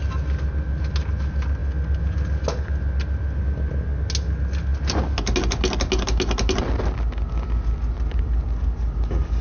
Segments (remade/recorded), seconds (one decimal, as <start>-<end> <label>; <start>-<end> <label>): 0.0-9.4 recorded